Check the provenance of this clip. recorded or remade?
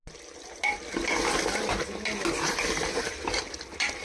recorded